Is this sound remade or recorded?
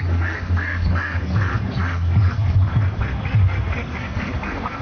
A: remade